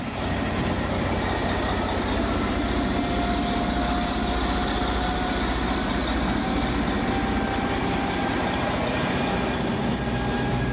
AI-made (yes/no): no